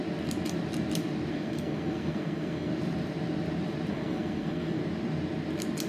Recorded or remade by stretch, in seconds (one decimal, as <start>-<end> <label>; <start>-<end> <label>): 0.0-1.3 recorded; 1.3-2.7 remade; 2.7-3.9 recorded; 3.9-4.8 remade; 4.8-5.9 recorded